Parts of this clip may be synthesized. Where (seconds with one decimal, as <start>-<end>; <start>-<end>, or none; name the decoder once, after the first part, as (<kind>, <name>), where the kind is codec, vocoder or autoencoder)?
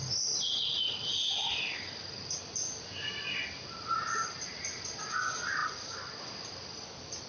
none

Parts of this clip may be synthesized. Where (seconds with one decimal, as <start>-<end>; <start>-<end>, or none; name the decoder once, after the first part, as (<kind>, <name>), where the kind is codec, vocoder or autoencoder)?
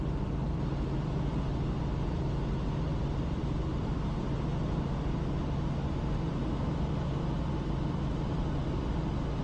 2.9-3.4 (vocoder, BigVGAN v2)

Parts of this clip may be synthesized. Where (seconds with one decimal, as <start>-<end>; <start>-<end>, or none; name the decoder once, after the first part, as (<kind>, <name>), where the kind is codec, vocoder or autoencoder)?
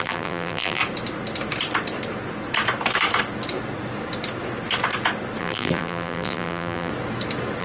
0.0-0.8 (vocoder, BigVGAN v2); 5.4-6.9